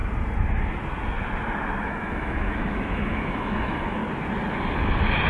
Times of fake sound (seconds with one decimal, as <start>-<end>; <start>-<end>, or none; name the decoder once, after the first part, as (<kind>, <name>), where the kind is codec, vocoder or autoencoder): 1.8-4.0 (autoencoder, DAC-VAE)